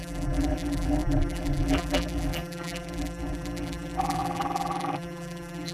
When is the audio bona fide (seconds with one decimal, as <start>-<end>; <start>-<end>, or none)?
none